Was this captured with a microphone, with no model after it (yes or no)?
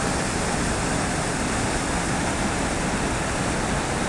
yes